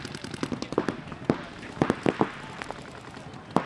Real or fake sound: real